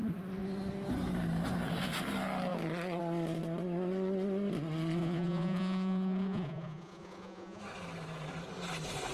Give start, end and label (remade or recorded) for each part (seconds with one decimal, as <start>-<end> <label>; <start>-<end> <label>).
0.0-5.0 recorded; 5.0-7.6 remade; 7.6-9.1 recorded